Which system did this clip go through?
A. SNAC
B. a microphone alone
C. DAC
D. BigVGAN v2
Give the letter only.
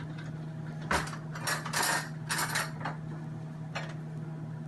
B